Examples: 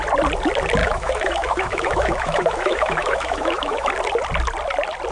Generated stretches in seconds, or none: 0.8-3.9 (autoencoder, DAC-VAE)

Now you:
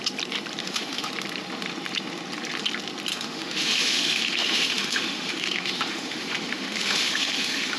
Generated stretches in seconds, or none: 0.6-1.1 (autoencoder, DAC-VAE); 3.1-7.8

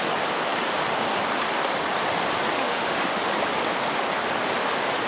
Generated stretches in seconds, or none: 2.6-3.3 (autoencoder, DAC-VAE)

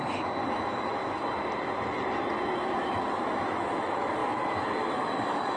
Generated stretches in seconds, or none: 0.0-1.0 (autoencoder, DAC-VAE); 2.6-5.6

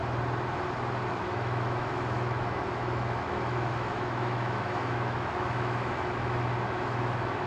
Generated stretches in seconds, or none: 1.1-7.5 (autoencoder, DAC-VAE)

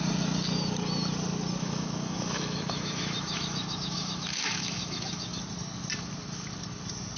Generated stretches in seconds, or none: 1.6-5.4 (autoencoder, DAC-VAE)